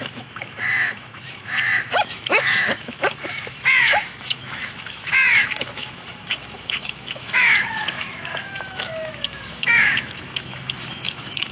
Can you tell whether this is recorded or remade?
remade